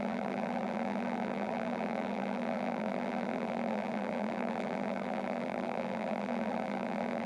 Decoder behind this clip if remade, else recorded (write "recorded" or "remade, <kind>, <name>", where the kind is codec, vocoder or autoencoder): remade, vocoder, BigVGAN v2